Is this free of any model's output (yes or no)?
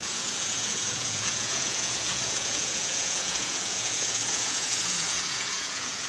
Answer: no